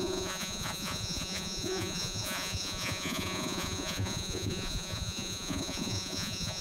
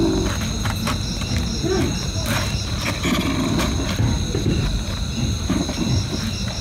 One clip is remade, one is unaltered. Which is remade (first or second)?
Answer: first